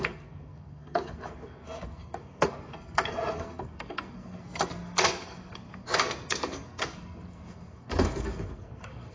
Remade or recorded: remade